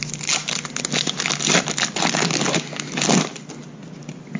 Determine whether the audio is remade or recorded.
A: recorded